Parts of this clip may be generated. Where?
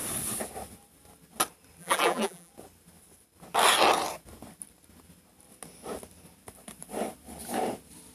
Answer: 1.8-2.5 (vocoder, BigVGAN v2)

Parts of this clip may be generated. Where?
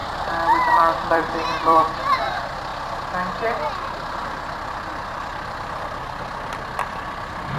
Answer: 0.0-2.7 (vocoder, BigVGAN v2); 4.7-7.6